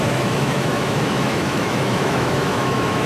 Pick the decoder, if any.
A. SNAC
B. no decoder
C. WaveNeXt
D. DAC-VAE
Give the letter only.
D